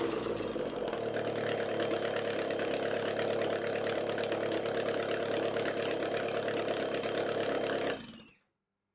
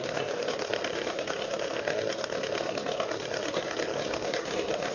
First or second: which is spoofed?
second